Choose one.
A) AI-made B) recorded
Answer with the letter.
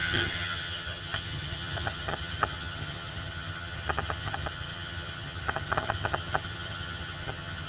A